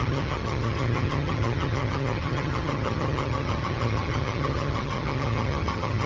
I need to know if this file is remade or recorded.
remade